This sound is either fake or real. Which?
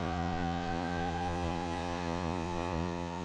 fake